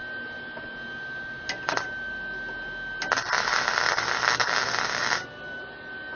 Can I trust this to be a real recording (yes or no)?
yes